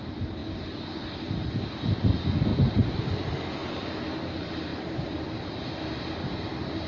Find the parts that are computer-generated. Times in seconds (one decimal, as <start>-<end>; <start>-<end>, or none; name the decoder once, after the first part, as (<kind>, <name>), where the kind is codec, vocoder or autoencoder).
2.5-3.0 (vocoder, BigVGAN v2); 3.5-4.2; 4.7-6.9